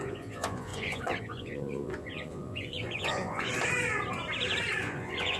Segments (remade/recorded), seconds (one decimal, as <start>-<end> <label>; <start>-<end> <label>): 0.0-3.5 remade; 3.5-4.8 recorded; 4.8-5.4 remade